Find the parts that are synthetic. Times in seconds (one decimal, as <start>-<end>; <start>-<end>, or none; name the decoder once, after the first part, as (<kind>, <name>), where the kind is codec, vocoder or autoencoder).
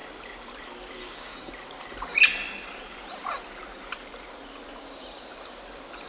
1.0-1.5 (codec, DAC)